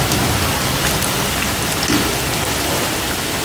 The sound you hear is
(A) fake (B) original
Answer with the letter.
B